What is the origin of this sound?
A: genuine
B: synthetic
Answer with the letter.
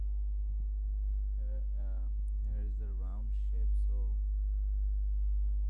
A